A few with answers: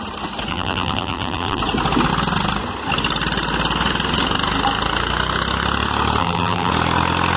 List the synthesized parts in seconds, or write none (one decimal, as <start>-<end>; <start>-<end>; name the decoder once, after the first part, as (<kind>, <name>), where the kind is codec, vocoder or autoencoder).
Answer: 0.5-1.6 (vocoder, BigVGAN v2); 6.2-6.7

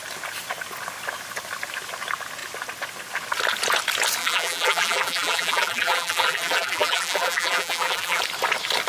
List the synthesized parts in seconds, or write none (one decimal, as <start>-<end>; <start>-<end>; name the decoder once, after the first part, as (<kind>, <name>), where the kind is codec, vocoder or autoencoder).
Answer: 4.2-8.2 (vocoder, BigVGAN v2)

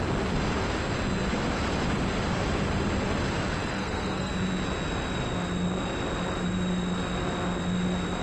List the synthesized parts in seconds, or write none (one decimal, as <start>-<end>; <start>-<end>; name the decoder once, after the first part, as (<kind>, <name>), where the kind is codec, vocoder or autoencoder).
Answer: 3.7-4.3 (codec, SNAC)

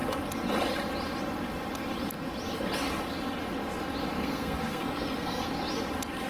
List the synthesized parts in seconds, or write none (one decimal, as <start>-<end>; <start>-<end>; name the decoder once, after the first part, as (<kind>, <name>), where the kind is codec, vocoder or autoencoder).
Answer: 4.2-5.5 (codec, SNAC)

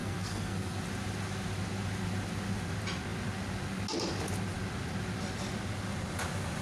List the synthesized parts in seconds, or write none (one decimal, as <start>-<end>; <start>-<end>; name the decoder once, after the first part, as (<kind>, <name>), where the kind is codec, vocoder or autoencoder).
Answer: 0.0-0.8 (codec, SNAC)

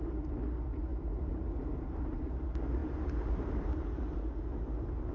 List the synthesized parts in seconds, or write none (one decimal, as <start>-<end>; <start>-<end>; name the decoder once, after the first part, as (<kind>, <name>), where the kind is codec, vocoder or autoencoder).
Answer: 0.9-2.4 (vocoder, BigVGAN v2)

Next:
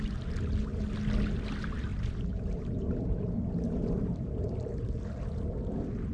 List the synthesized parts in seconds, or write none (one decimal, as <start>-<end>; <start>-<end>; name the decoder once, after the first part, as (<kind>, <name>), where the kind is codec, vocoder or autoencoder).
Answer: 1.9-4.8 (vocoder, BigVGAN v2)

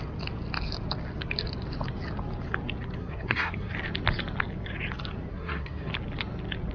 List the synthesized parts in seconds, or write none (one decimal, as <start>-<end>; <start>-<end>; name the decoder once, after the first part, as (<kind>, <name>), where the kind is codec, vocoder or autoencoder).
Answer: 3.0-3.7 (codec, SNAC); 5.3-5.9